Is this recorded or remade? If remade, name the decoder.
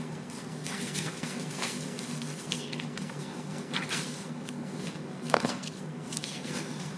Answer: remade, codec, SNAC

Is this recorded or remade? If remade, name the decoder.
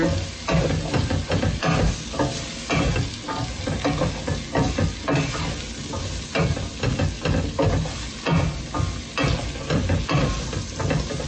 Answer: recorded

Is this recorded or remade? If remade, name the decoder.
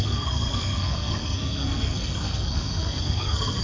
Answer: remade, codec, SNAC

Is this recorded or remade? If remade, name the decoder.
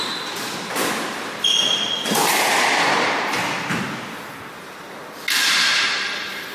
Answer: recorded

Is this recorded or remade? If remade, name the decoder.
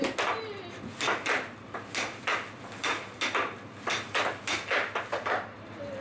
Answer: recorded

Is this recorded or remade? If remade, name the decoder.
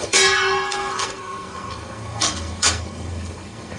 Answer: remade, codec, SNAC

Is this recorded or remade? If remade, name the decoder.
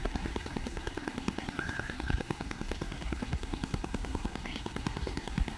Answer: remade, codec, SNAC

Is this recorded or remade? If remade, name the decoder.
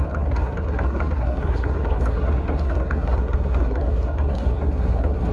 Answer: remade, codec, SNAC